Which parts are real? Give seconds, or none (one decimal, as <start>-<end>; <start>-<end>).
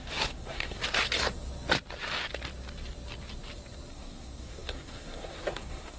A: 0.8-3.9